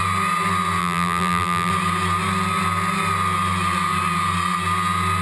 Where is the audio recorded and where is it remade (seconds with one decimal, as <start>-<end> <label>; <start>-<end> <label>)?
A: 0.0-0.8 recorded; 0.8-1.7 remade; 1.7-5.2 recorded